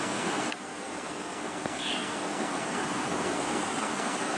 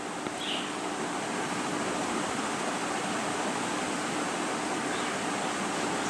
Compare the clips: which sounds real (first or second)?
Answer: second